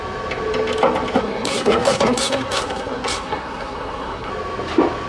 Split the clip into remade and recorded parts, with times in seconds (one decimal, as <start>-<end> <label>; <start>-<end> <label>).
0.0-1.2 recorded; 1.2-4.3 remade; 4.3-5.1 recorded